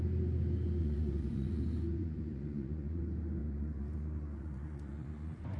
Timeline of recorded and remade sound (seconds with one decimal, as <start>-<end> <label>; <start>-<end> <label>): 0.0-0.8 recorded; 0.8-1.6 remade; 1.6-2.0 recorded; 2.0-3.0 remade; 3.0-3.4 recorded; 3.4-5.6 remade